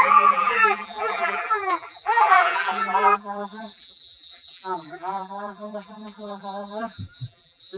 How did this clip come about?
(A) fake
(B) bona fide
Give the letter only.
A